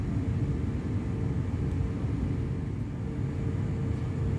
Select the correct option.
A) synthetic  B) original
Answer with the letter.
B